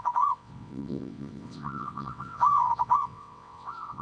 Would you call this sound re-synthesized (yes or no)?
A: yes